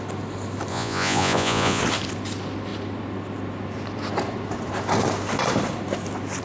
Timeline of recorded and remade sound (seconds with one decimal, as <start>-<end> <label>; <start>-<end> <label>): 0.0-0.7 recorded; 0.7-1.8 remade; 1.8-6.4 recorded

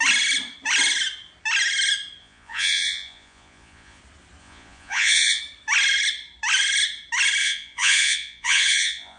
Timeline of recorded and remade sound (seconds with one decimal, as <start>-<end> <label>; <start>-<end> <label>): 0.0-2.2 recorded; 2.2-4.0 remade; 4.0-4.4 recorded; 4.4-5.4 remade; 5.4-7.4 recorded; 7.4-9.2 remade